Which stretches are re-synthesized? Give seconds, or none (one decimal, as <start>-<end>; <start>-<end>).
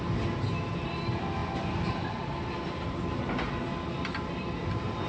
none